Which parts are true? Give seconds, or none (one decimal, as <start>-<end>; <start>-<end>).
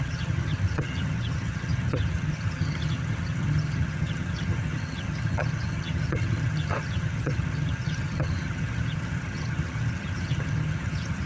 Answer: none